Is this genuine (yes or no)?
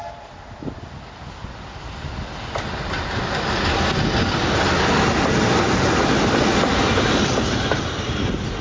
yes